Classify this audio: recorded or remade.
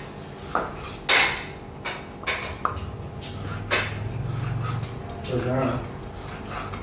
recorded